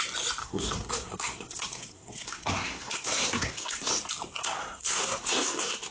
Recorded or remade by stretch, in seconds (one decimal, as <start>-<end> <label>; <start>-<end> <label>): 0.0-0.4 recorded; 0.4-3.9 remade; 3.9-4.4 recorded; 4.4-5.9 remade